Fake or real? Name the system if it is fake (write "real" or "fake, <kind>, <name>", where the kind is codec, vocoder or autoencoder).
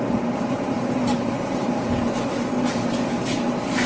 fake, vocoder, BigVGAN v2